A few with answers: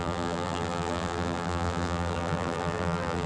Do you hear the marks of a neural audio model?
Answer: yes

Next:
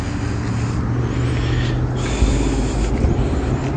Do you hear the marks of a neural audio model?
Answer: no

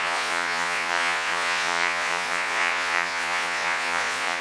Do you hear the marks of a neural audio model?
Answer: yes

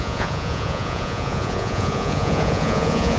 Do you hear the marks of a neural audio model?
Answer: yes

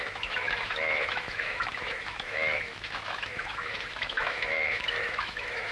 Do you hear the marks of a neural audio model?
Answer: yes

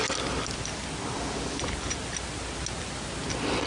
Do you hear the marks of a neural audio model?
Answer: no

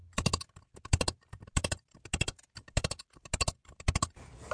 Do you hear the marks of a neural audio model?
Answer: no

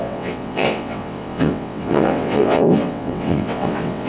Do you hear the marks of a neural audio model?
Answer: yes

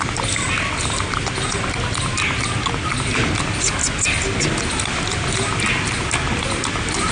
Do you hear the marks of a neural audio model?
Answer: no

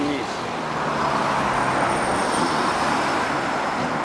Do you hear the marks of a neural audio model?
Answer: no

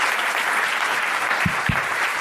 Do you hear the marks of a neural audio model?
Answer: yes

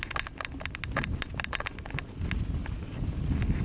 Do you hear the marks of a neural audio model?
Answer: no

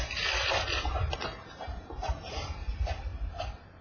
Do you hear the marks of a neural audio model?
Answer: yes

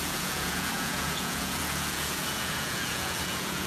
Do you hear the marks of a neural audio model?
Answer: yes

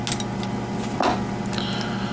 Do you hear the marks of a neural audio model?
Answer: no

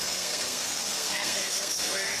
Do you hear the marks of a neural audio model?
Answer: yes